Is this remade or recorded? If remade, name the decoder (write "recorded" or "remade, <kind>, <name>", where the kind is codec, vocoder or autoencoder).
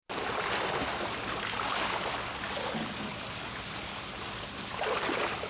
recorded